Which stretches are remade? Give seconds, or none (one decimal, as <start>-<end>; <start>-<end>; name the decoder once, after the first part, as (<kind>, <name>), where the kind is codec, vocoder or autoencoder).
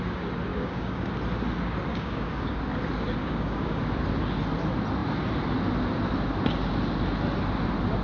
0.5-1.1 (codec, DAC); 1.9-2.6; 3.2-3.8